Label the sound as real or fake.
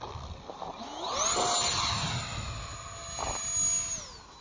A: real